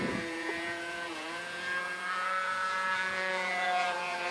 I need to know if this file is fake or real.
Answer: fake